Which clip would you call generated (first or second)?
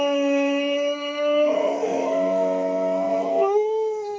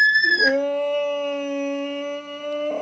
first